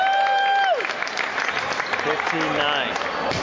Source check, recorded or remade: recorded